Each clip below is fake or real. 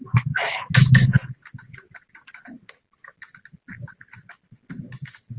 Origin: real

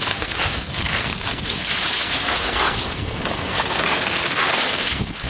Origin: fake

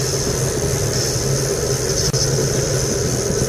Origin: real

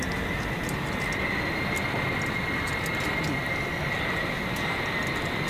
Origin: real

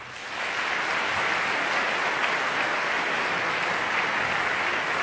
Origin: real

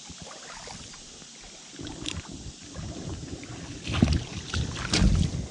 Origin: real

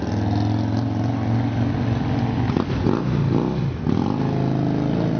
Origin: real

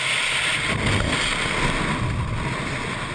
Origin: real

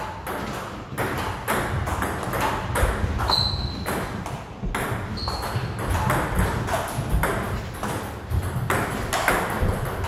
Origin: real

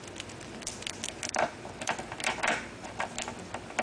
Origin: real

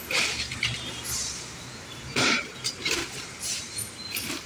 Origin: fake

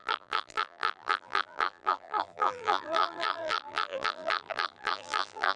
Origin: fake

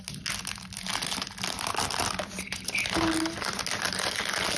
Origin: real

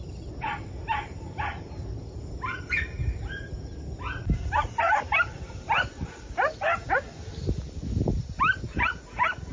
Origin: real